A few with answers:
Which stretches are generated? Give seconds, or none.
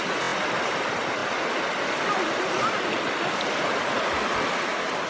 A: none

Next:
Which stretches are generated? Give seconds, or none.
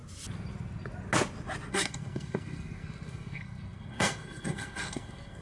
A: 1.7-5.4 (codec, SNAC)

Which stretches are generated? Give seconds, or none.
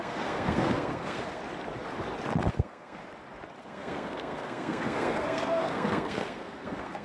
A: 0.0-1.4 (codec, SNAC); 2.5-3.0; 3.6-7.0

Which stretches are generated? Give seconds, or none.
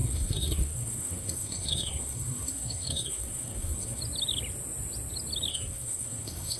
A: 0.0-4.0 (codec, SNAC); 5.5-6.6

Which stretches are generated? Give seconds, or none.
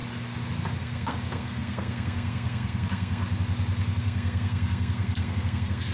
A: 0.8-3.2 (codec, SNAC); 4.0-5.9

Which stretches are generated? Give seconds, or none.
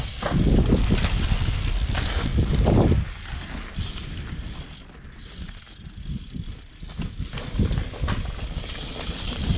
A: none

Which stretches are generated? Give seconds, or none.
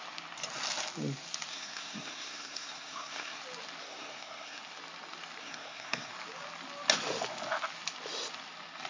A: 1.5-3.4 (codec, SNAC); 3.8-4.6; 5.4-6.1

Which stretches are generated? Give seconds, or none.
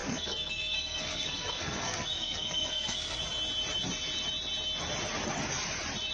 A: 0.0-3.2 (codec, SNAC)